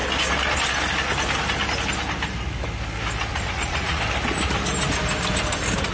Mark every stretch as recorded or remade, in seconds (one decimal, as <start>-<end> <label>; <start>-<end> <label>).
0.0-3.3 recorded; 3.3-4.0 remade; 4.0-5.9 recorded